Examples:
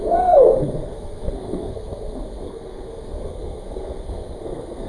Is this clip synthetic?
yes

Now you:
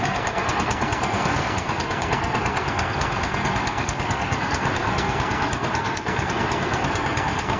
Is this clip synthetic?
yes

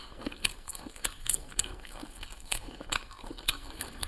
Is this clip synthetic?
yes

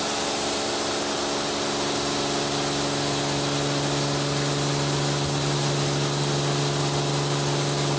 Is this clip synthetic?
no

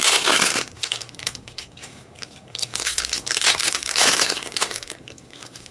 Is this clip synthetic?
yes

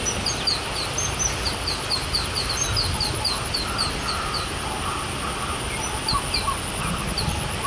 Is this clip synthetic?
no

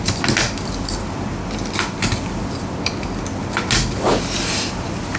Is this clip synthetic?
no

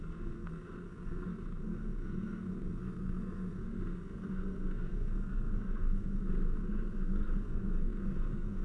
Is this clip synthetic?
yes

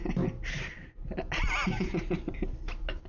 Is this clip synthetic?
no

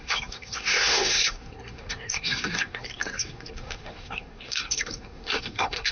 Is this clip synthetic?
yes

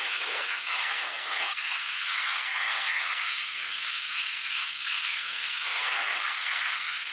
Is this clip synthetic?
yes